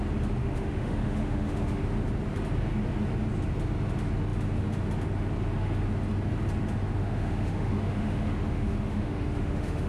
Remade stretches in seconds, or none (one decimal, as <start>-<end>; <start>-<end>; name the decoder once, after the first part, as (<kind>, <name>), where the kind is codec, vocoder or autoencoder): 0.4-1.8 (autoencoder, DAC-VAE); 7.0-9.9

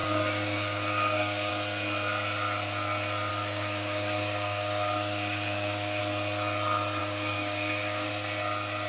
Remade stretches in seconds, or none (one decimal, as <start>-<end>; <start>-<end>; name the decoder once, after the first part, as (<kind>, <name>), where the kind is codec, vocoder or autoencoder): 0.0-1.5 (codec, DAC); 3.3-6.0; 7.0-8.1

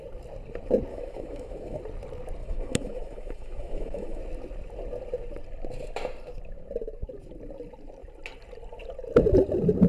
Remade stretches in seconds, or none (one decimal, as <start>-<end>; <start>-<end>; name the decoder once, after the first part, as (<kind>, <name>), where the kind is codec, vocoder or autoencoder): 0.9-1.8 (autoencoder, DAC-VAE); 2.4-4.2

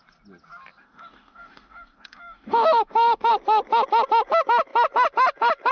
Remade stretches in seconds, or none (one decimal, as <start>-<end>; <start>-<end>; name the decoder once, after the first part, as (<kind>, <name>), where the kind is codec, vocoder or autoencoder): 0.8-3.3 (autoencoder, DAC-VAE)

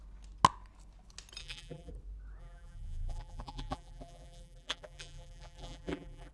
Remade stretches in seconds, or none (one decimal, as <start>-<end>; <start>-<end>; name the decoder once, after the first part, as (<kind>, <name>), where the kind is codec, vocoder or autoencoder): 1.4-1.9 (vocoder, BigVGAN v2); 2.4-6.3